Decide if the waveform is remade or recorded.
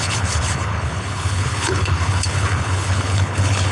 remade